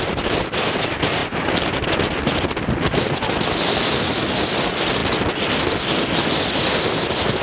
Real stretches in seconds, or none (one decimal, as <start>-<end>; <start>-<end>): 0.0-1.2; 1.8-7.4